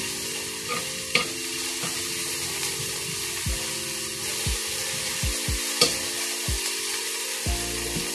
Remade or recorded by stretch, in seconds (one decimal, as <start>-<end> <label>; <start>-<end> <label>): 0.0-8.1 recorded